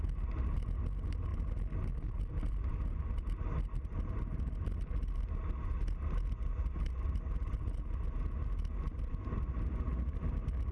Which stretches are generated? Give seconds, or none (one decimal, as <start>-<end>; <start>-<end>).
none